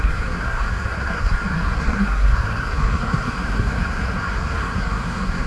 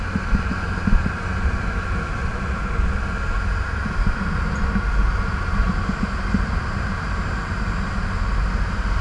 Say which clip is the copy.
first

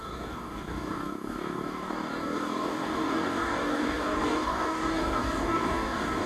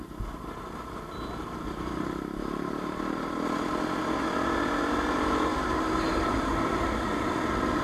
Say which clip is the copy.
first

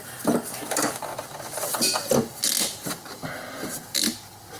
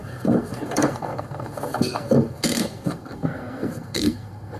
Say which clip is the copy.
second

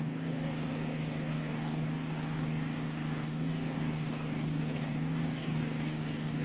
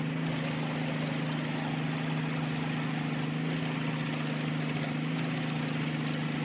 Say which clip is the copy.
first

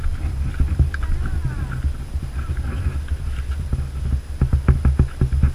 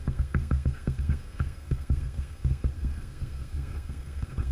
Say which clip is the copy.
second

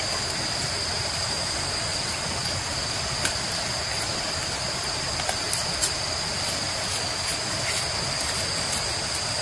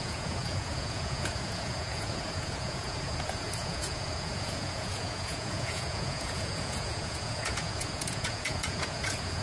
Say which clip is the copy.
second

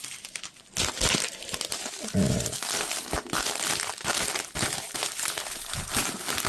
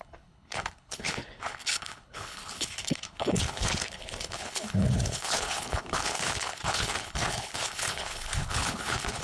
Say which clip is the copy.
second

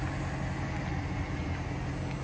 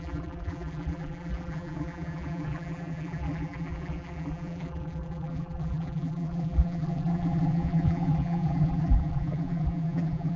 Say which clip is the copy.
second